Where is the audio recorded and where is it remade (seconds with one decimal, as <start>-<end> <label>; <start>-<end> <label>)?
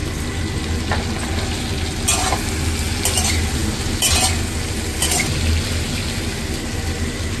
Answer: 0.0-7.4 recorded